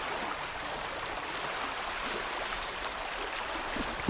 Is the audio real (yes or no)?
yes